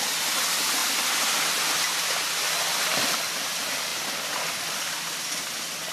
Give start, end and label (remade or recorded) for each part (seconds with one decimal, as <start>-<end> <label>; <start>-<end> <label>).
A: 0.0-5.9 recorded